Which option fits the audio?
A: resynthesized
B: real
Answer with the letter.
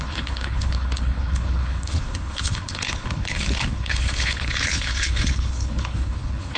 A